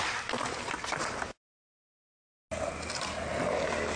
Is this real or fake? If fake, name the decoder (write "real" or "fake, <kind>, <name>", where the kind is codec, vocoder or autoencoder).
real